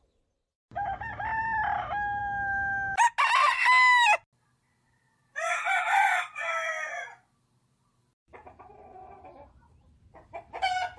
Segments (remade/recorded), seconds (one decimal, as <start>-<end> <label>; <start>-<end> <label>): 0.0-11.0 recorded

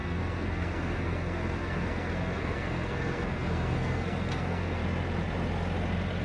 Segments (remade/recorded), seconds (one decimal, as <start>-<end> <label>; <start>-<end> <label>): 0.0-4.8 remade; 4.8-6.2 recorded

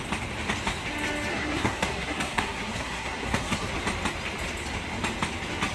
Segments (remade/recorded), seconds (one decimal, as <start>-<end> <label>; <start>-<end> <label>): 0.0-1.3 recorded; 1.3-3.7 remade; 3.7-5.7 recorded

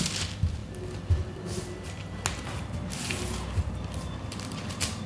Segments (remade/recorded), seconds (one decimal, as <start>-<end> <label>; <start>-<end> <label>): 0.0-5.1 recorded

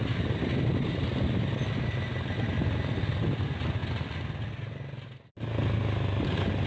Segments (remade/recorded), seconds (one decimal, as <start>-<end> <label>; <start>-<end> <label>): 0.0-6.7 recorded